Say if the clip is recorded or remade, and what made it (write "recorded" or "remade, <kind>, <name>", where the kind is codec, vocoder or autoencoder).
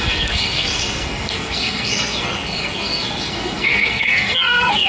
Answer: remade, codec, SNAC